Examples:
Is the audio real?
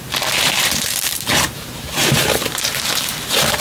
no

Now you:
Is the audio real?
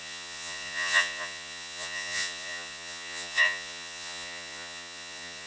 no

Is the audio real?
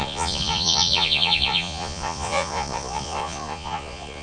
no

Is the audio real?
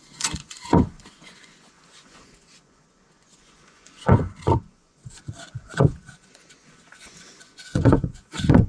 no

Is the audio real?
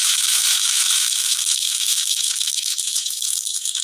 no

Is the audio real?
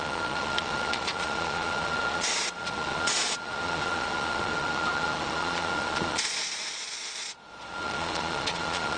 no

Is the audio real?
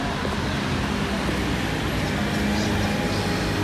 yes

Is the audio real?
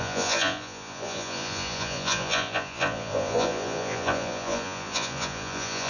no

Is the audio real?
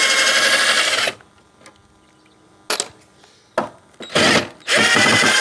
yes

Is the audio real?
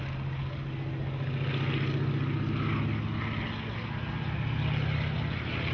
yes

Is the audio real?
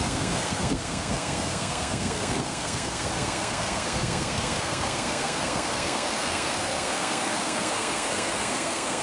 no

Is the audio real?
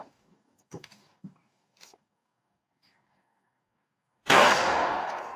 no